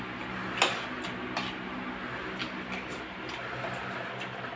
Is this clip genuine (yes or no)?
yes